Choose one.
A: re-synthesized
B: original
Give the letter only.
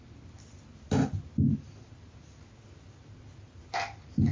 B